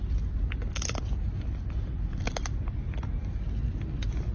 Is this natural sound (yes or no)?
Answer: yes